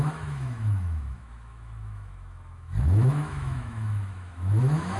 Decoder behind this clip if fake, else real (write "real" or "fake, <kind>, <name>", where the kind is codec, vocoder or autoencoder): fake, autoencoder, DAC-VAE